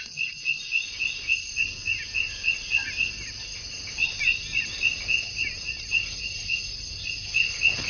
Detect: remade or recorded recorded